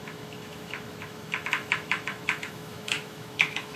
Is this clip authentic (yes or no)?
no